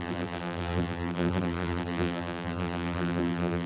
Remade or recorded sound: remade